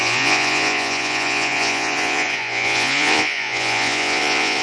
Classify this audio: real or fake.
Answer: fake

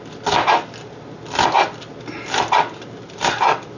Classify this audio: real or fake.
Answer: real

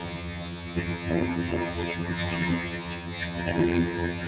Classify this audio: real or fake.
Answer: fake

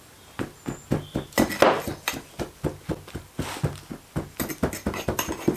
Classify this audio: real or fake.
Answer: real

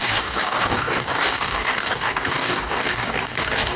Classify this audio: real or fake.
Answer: fake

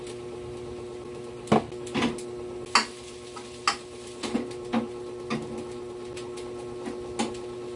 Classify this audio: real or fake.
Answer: real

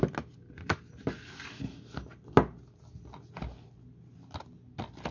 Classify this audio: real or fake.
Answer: real